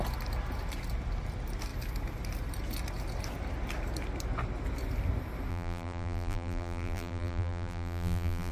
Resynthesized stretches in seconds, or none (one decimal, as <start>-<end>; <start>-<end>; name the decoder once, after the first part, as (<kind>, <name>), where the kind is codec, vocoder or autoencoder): 5.5-8.5 (vocoder, BigVGAN v2)